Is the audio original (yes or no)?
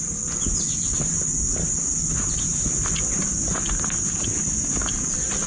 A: yes